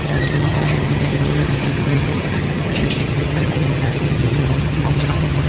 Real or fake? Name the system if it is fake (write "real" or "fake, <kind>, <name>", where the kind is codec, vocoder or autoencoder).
fake, vocoder, HiFi-GAN